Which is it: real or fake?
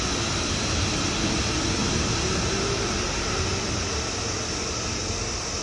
real